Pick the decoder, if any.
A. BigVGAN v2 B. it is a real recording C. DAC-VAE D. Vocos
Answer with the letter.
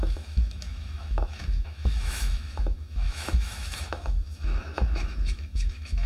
C